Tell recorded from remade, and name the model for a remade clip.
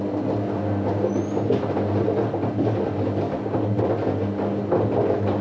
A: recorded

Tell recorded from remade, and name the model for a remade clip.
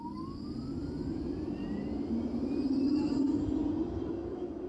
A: recorded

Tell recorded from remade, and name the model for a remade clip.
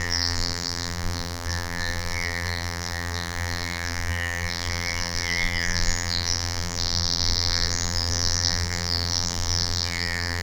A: remade, vocoder, BigVGAN v2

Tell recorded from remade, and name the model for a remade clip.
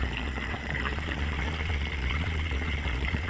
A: remade, vocoder, Vocos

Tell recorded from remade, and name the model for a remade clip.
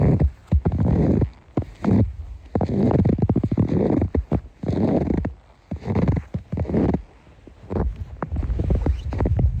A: recorded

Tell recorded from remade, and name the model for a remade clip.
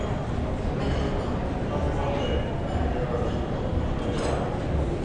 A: recorded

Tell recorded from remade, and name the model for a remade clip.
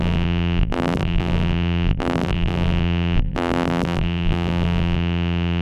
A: remade, vocoder, BigVGAN v2